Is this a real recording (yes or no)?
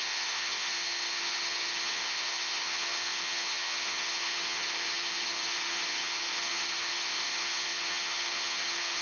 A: no